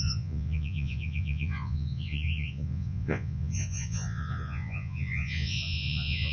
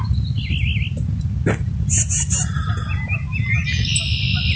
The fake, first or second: first